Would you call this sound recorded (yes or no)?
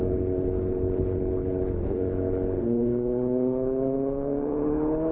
no